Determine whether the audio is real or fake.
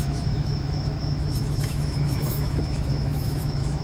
fake